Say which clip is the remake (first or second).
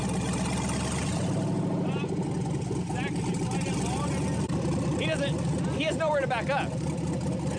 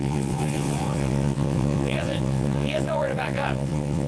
second